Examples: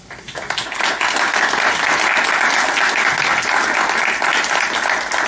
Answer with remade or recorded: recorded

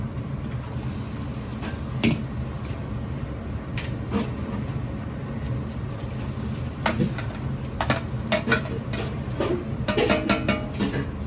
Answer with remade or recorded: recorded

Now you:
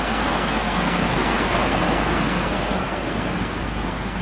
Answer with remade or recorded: remade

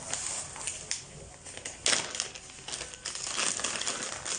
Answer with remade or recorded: recorded